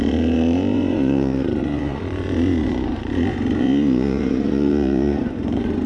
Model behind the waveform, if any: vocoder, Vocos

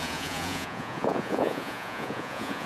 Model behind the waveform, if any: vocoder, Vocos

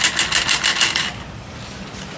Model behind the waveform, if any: none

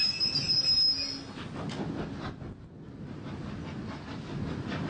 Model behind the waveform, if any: none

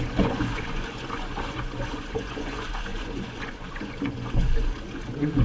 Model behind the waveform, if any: vocoder, Vocos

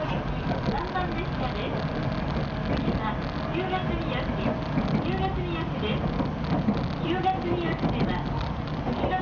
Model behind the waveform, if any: none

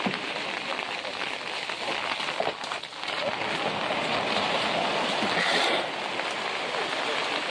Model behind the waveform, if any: none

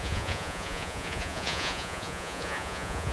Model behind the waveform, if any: vocoder, Vocos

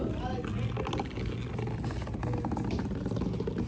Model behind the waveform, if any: none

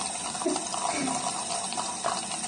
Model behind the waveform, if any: none